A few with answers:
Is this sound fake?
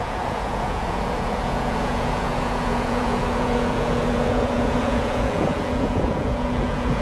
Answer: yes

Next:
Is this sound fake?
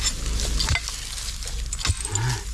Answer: no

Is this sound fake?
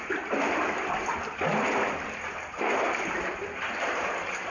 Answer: no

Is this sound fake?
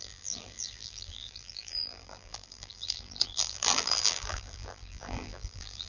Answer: yes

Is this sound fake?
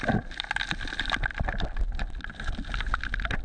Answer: no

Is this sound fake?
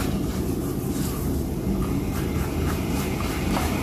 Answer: yes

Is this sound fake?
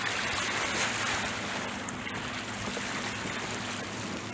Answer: no